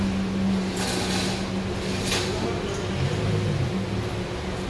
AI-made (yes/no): no